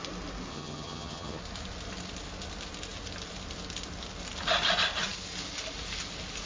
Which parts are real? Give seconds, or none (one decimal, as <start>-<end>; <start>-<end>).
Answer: 0.0-0.5; 1.4-6.5